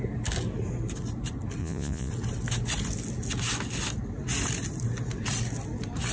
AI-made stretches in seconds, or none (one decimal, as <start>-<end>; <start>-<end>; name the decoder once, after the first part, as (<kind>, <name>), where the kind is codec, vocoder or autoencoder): 1.6-2.1 (vocoder, Vocos)